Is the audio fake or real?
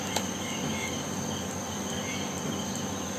real